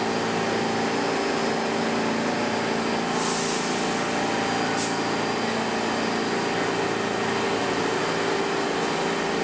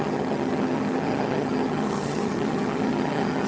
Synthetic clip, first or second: second